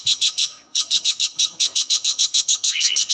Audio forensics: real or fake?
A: fake